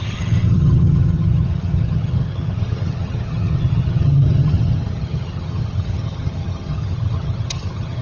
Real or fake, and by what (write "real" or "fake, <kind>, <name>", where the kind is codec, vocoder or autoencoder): fake, vocoder, HiFi-GAN